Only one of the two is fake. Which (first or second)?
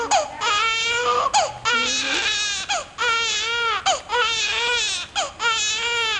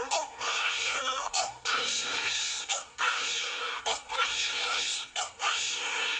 second